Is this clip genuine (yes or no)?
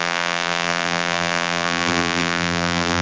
no